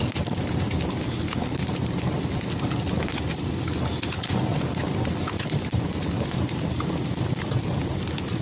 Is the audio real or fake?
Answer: real